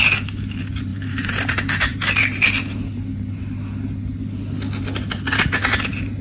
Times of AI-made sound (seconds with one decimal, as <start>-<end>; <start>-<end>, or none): 0.9-2.2

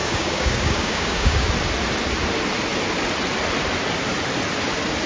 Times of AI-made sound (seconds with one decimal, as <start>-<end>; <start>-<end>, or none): 0.0-1.5

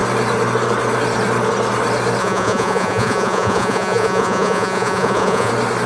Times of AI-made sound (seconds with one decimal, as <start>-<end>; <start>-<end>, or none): 2.2-5.5

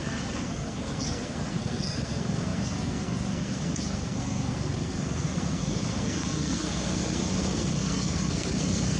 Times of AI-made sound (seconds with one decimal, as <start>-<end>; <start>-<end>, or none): 0.0-9.0